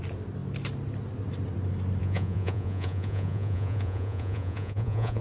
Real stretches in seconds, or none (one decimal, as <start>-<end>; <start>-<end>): 0.0-2.0